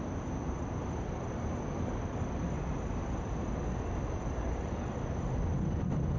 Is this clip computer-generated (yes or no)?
no